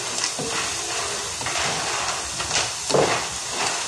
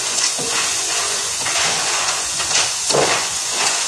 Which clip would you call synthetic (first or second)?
second